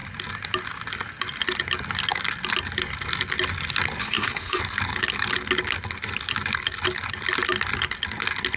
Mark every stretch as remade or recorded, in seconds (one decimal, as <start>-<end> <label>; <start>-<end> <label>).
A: 0.0-4.0 recorded; 4.0-4.6 remade; 4.6-8.6 recorded